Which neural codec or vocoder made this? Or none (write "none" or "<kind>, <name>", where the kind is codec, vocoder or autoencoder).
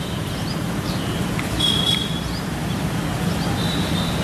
none